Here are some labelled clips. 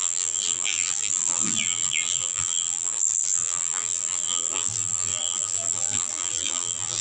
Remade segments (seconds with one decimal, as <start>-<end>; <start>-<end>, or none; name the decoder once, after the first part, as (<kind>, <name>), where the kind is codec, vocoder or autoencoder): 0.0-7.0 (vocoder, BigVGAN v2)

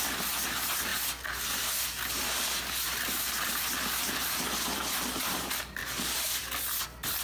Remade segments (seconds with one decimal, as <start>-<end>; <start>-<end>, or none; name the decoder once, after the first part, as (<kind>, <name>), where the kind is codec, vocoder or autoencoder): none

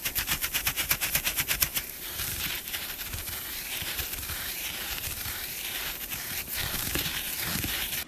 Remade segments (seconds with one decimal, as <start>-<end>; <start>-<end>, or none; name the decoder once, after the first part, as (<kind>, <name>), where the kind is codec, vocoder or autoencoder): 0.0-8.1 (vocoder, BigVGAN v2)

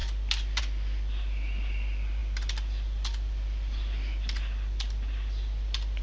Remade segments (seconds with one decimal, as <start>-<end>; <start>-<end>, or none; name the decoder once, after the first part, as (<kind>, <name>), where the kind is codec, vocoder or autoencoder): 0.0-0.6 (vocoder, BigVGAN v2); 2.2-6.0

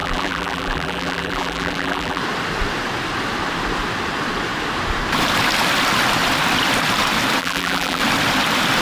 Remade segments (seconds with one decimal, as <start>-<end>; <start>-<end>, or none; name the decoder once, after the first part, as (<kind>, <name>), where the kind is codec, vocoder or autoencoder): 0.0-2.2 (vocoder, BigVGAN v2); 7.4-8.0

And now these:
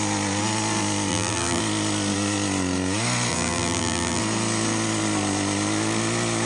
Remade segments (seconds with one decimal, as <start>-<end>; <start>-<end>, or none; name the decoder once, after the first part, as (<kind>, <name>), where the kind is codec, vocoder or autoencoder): 1.1-1.6 (vocoder, BigVGAN v2); 3.3-4.2